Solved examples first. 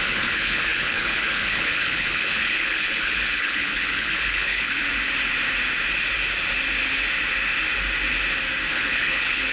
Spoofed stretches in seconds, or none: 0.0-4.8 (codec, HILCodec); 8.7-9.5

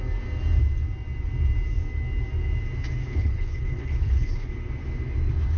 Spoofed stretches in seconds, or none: 3.1-4.5 (codec, HILCodec)

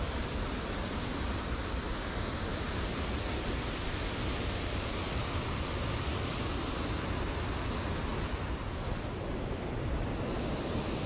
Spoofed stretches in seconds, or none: none

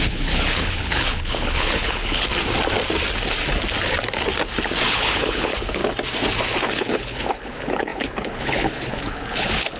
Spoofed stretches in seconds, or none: 0.0-2.3 (codec, HILCodec); 4.9-5.8; 6.6-9.8

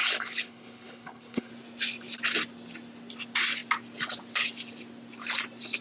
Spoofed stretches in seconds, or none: 0.0-1.5 (codec, HILCodec)